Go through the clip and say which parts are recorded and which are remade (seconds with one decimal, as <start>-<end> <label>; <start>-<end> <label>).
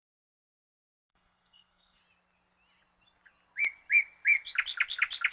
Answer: 0.0-2.0 remade; 2.0-5.3 recorded